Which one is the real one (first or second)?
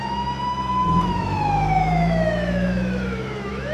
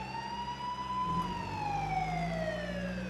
second